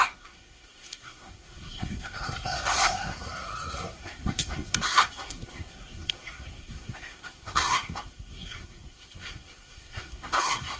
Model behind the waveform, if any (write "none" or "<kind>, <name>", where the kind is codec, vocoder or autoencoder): codec, SNAC